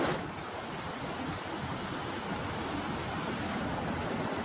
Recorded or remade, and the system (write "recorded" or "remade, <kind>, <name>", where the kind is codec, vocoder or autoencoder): recorded